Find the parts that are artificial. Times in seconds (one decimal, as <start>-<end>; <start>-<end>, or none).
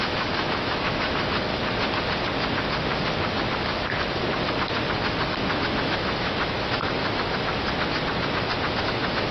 0.0-1.5; 5.3-7.0; 8.8-9.3